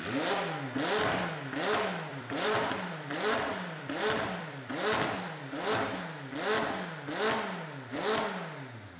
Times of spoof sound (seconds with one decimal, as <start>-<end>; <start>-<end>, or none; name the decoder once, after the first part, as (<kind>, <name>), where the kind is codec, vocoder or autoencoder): 2.1-5.9 (vocoder, BigVGAN v2)